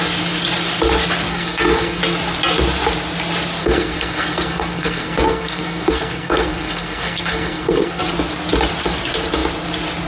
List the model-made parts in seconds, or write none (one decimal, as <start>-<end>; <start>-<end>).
1.3-2.0; 3.6-8.0